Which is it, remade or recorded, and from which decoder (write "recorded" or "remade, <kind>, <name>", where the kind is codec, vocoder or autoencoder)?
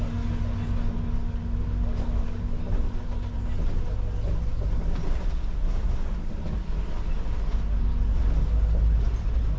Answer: recorded